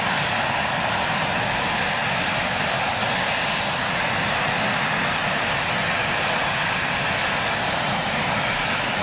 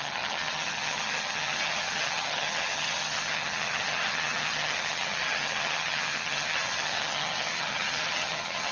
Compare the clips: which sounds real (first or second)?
first